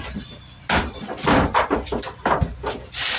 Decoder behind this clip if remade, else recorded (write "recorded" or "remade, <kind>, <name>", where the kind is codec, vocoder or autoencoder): remade, vocoder, BigVGAN v2